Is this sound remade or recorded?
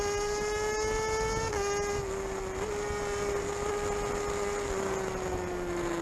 recorded